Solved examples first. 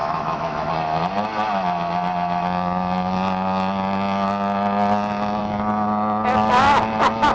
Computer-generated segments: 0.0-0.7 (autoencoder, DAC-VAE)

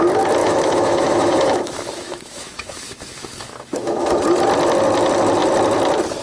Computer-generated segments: 0.4-4.1 (autoencoder, DAC-VAE)

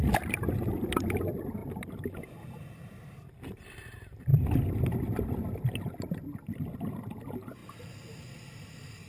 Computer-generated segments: none

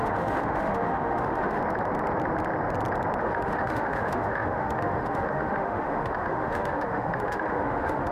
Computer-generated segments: 0.0-1.6 (autoencoder, DAC-VAE); 3.2-8.1

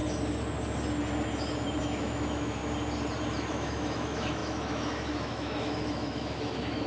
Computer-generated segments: 1.8-2.6 (autoencoder, DAC-VAE); 3.5-6.9

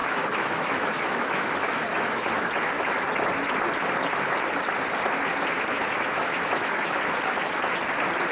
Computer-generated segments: 0.0-2.4 (autoencoder, DAC-VAE); 5.7-7.0